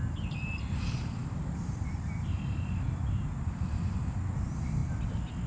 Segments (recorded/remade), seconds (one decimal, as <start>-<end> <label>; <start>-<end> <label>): 0.0-5.5 recorded